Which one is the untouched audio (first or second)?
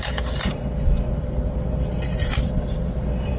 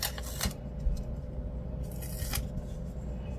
second